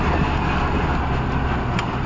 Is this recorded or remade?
recorded